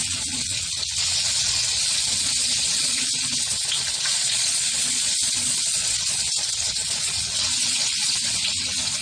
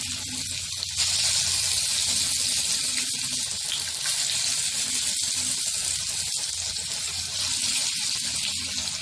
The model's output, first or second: first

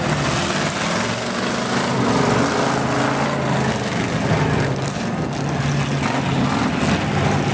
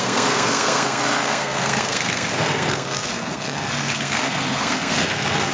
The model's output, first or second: second